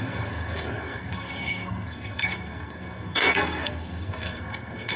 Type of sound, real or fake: fake